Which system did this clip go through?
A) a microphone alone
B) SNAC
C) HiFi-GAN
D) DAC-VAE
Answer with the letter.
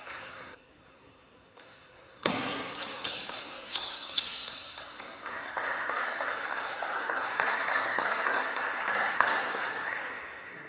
B